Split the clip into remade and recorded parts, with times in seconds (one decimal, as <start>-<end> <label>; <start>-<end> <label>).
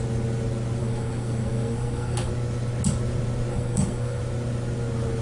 0.0-0.8 recorded; 0.8-2.3 remade; 2.3-3.5 recorded; 3.5-4.2 remade; 4.2-5.2 recorded